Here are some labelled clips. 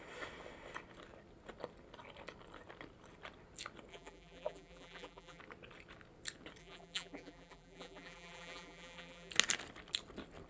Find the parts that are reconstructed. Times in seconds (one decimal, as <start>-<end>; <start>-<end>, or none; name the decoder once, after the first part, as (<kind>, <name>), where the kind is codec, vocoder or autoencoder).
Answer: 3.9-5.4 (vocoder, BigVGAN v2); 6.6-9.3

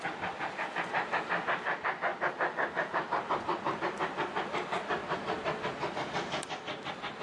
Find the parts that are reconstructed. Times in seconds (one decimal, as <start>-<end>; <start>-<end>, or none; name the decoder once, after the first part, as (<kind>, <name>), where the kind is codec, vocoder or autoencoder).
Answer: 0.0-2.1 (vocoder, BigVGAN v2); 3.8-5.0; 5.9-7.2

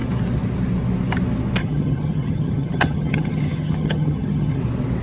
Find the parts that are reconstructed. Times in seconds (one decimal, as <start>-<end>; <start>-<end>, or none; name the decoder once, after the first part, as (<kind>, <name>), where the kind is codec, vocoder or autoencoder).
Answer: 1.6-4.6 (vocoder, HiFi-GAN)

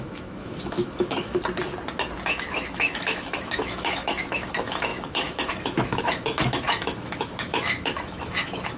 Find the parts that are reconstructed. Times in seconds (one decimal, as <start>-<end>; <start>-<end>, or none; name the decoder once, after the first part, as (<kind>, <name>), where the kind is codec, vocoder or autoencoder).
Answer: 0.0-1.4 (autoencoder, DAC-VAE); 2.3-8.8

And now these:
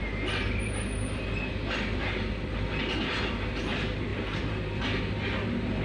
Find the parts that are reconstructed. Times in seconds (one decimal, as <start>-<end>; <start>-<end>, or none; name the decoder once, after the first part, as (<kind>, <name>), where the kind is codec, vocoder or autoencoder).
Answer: 4.1-4.8 (vocoder, BigVGAN v2)

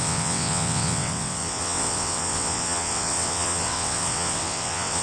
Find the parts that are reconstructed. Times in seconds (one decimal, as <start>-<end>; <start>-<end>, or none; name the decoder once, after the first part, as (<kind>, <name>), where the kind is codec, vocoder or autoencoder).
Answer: 0.0-5.0 (vocoder, WaveNeXt)

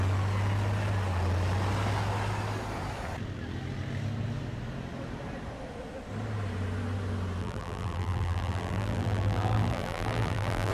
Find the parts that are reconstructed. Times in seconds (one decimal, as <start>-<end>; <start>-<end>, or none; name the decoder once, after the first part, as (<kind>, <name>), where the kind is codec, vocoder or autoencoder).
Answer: 7.4-10.7 (vocoder, BigVGAN v2)